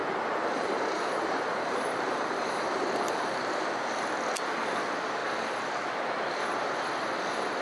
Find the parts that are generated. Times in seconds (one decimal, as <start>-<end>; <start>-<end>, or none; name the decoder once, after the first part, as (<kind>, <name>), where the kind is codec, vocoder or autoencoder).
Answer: 0.0-3.9 (vocoder, BigVGAN v2)